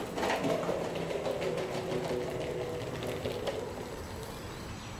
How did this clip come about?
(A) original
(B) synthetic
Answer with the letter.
A